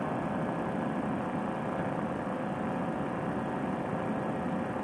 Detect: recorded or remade recorded